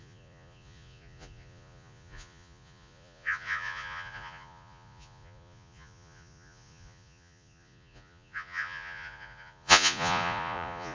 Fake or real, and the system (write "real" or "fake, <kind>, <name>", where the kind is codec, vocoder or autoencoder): fake, vocoder, Vocos